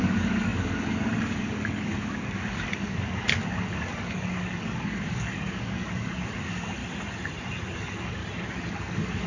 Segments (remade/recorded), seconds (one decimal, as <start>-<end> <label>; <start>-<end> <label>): 0.0-6.8 remade; 6.8-7.7 recorded; 7.7-8.2 remade; 8.2-8.7 recorded; 8.7-9.3 remade

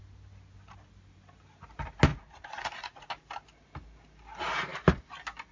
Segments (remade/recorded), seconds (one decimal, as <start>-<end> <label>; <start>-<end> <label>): 0.0-2.1 recorded; 2.1-3.1 remade; 3.1-5.5 recorded

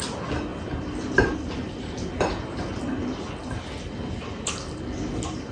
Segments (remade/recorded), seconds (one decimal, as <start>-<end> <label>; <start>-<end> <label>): 0.0-5.5 recorded

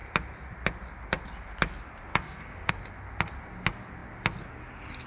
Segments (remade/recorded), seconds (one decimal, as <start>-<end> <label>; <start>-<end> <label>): 0.0-2.1 recorded; 2.1-2.7 remade; 2.7-5.1 recorded